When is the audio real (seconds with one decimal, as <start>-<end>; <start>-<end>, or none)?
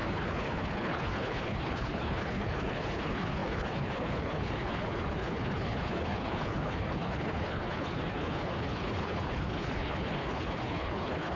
none